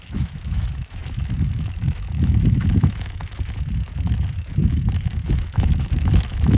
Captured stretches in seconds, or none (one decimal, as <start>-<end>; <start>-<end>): none